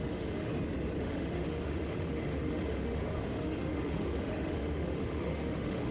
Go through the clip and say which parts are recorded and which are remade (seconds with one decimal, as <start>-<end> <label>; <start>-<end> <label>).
0.0-0.5 remade; 0.5-1.0 recorded; 1.0-5.9 remade